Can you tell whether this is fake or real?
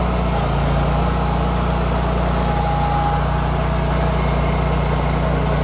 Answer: real